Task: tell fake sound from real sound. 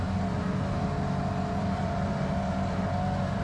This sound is real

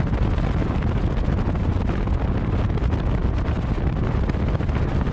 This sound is real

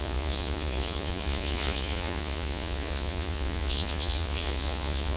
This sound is fake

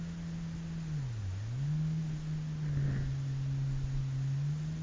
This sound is real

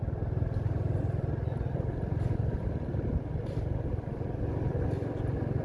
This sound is real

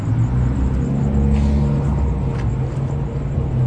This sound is real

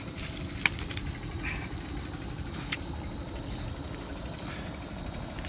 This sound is real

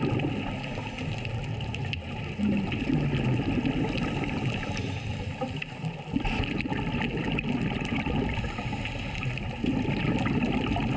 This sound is real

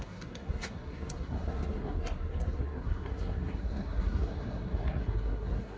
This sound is fake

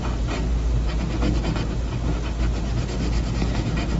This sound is real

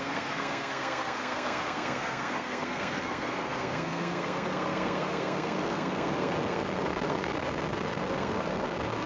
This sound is fake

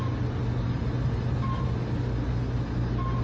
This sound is real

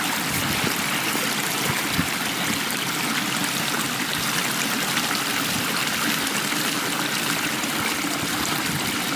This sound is real